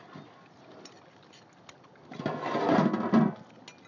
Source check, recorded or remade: recorded